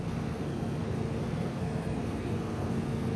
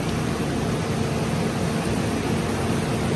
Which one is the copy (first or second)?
first